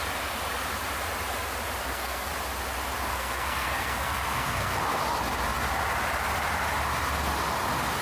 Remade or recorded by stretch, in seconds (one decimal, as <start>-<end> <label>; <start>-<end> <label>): 0.0-1.8 recorded; 1.8-2.3 remade; 2.3-3.1 recorded; 3.1-5.0 remade; 5.0-8.0 recorded

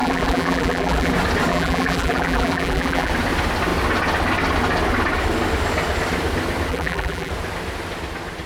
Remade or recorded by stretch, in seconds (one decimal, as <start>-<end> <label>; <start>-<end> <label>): 0.0-1.1 remade; 1.1-1.5 recorded; 1.5-3.1 remade; 3.1-6.7 recorded; 6.7-7.3 remade; 7.3-8.5 recorded

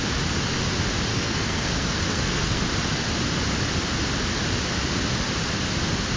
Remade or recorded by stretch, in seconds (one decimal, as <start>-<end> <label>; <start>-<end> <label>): 0.0-1.1 recorded; 1.1-2.6 remade; 2.6-6.2 recorded

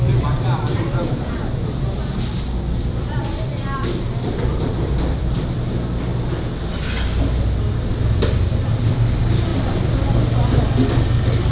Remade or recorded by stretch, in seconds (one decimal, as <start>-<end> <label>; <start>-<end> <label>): 0.0-6.1 remade; 6.1-8.0 recorded; 8.0-9.5 remade; 9.5-11.5 recorded

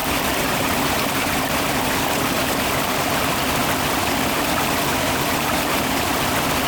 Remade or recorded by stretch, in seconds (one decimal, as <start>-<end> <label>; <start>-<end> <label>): 0.0-4.9 recorded; 4.9-6.3 remade; 6.3-6.7 recorded

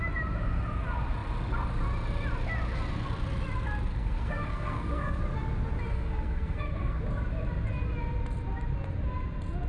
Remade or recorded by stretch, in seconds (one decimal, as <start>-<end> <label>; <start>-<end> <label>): 0.0-3.9 recorded; 3.9-5.2 remade; 5.2-5.9 recorded; 5.9-7.0 remade; 7.0-9.7 recorded

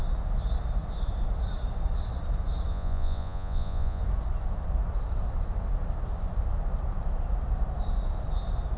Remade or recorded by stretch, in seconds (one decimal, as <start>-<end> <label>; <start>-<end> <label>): 0.0-2.7 recorded; 2.7-4.0 remade; 4.0-8.8 recorded